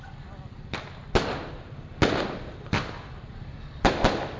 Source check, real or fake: real